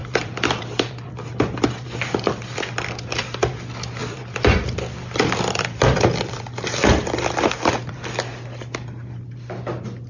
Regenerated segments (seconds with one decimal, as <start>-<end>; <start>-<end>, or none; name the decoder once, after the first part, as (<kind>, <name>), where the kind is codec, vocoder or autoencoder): 0.0-2.6 (vocoder, BigVGAN v2); 4.0-7.1